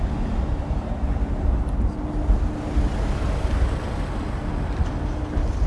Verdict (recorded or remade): recorded